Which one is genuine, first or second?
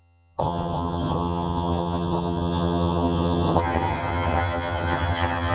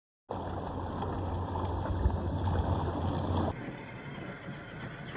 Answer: second